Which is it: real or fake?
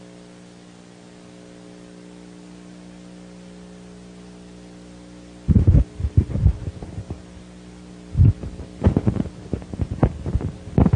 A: real